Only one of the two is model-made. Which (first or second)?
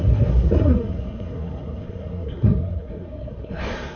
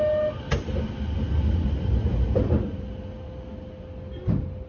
first